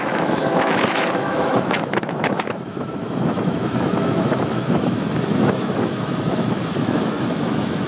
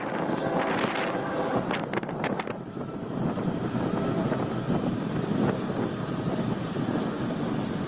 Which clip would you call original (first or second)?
second